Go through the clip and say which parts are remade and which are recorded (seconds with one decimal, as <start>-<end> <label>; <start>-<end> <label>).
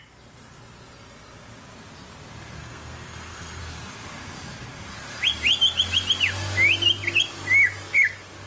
0.0-2.6 recorded; 2.6-3.6 remade; 3.6-8.5 recorded